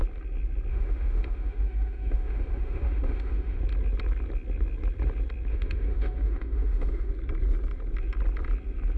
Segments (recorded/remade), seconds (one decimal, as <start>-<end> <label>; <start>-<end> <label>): 0.0-0.7 recorded; 0.7-3.6 remade; 3.6-5.5 recorded; 5.5-7.1 remade; 7.1-9.0 recorded